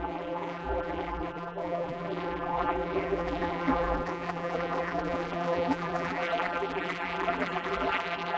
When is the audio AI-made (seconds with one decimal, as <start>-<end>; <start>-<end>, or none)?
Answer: 0.0-8.4